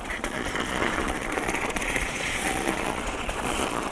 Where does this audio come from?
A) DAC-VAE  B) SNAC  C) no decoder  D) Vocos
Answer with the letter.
D